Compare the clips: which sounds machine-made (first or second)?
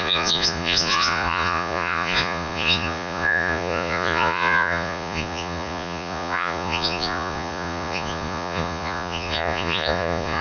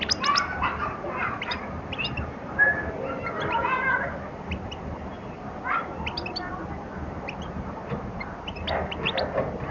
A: first